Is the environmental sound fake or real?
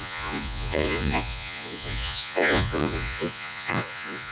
fake